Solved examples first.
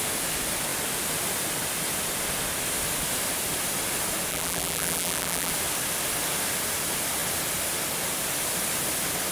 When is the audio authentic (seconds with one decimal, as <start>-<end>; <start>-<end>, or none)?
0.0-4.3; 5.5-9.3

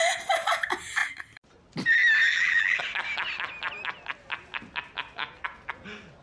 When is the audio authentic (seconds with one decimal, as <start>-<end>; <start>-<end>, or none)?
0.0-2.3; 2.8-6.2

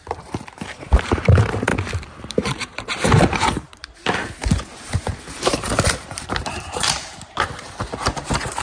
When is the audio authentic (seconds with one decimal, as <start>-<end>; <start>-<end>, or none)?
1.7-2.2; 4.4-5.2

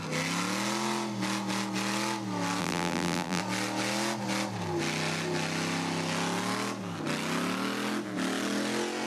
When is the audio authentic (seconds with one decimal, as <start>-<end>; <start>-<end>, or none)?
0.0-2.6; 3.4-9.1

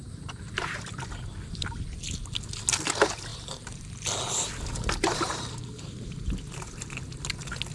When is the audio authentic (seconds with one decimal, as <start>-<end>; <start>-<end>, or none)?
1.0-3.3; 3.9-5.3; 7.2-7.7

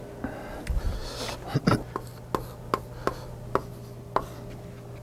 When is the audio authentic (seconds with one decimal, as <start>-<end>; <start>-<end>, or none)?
0.0-5.0